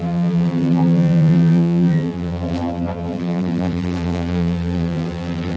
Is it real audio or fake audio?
fake